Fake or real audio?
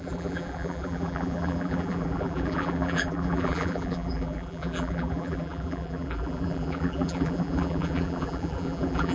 fake